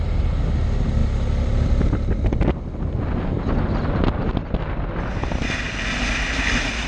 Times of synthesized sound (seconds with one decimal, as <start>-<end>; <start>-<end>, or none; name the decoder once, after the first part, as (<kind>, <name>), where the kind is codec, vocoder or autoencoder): none